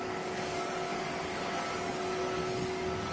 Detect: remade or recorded remade